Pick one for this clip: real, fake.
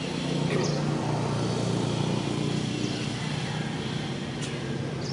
real